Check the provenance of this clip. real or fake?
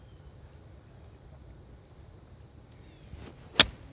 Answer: real